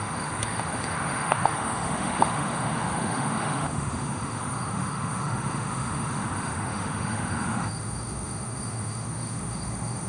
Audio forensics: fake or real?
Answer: fake